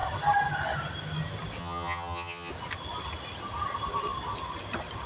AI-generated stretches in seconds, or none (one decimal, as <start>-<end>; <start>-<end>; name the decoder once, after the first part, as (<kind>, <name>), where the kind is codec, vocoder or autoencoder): 1.6-2.5 (vocoder, HiFi-GAN)